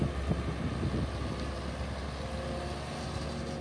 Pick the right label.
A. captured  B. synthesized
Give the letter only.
A